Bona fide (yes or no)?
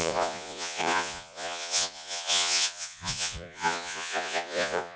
no